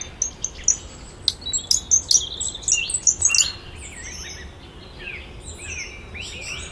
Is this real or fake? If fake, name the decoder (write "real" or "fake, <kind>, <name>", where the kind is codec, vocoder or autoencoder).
real